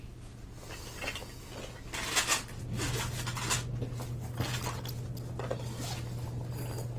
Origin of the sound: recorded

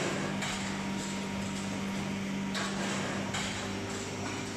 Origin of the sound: recorded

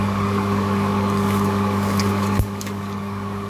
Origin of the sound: remade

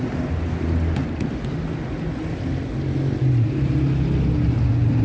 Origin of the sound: recorded